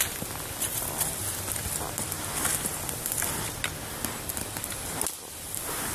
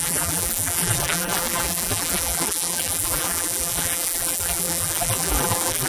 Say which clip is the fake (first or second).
second